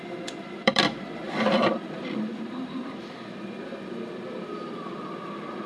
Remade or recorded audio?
remade